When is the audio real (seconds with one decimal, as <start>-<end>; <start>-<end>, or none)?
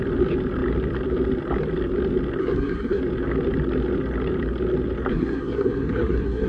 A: 0.0-2.4; 3.0-5.1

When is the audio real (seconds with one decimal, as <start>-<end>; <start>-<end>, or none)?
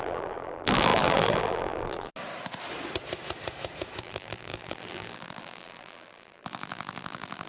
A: 2.1-4.0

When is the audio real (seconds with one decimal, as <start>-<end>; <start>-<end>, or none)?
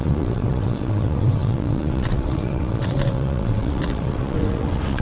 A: none